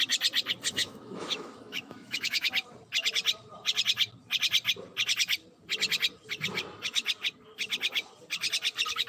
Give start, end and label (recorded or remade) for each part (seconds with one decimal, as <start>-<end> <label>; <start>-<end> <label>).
0.0-0.8 recorded; 0.8-2.5 remade; 2.5-9.1 recorded